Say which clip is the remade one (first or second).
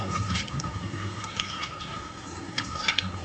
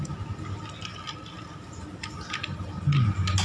first